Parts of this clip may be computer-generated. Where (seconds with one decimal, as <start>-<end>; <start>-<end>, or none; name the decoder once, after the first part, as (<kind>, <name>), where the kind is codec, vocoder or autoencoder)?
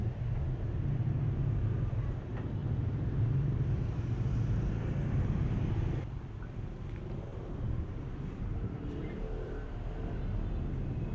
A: 2.6-4.0 (vocoder, BigVGAN v2); 7.3-10.2